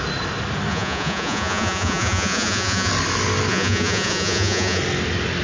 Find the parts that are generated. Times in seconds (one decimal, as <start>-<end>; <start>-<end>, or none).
0.7-2.9; 3.5-4.8